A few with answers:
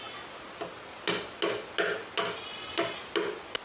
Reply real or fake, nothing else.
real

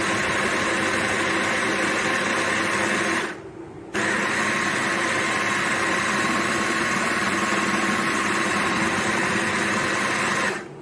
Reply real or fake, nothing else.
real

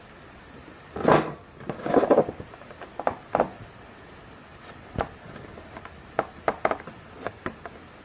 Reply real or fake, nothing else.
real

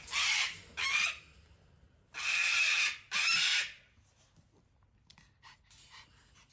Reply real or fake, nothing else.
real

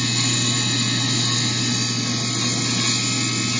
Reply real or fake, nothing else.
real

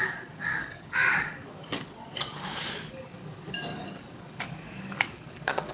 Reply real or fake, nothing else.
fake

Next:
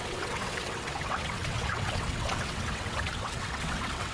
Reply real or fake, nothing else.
fake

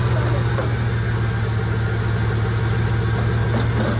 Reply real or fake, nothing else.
real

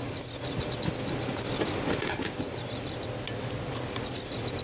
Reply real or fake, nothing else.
real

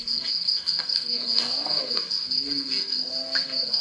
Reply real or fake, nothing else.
fake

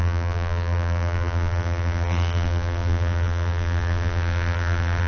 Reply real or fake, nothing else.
fake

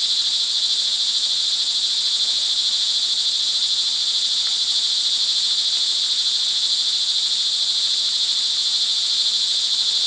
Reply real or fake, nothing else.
real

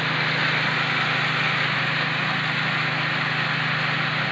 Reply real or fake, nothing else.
real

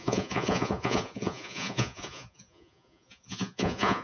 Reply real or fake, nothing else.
fake